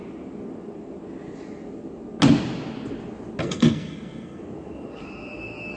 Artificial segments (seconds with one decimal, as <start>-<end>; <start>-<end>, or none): 3.4-4.4

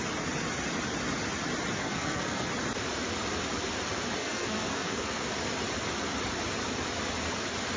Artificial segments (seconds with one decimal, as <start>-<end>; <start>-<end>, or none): 1.8-2.5; 4.2-5.2